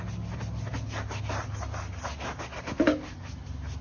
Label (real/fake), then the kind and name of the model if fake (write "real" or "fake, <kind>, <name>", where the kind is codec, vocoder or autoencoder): real